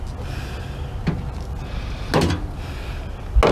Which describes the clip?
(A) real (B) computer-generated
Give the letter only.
A